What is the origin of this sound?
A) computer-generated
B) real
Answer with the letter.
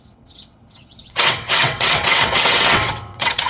A